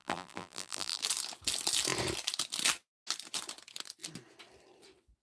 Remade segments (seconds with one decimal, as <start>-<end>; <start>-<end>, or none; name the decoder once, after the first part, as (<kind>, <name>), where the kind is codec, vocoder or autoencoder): 0.0-1.0 (vocoder, BigVGAN v2)